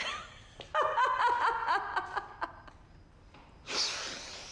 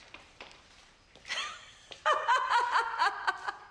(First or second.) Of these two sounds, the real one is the first